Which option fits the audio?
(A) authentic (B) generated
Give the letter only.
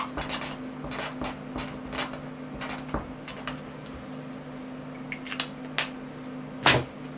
A